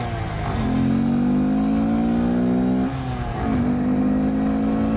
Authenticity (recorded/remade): recorded